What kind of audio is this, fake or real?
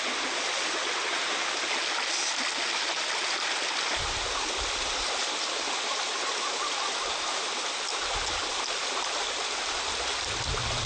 real